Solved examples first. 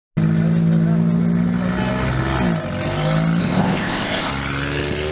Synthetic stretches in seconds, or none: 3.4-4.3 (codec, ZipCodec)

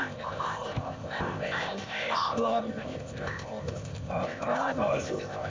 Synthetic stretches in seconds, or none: 0.0-5.5 (codec, ZipCodec)

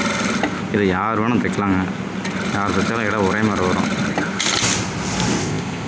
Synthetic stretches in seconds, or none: 5.4-5.9 (codec, ZipCodec)

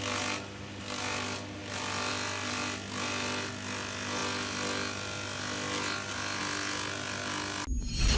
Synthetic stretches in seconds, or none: none

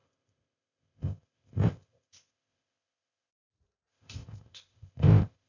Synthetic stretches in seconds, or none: 0.0-3.3 (codec, ZipCodec); 3.9-5.5

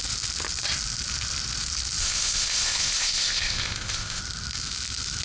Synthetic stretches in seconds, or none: 2.0-4.2 (codec, ZipCodec)

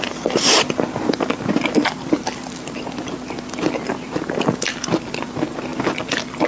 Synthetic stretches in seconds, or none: none

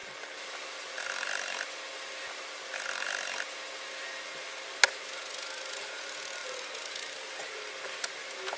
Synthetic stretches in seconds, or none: none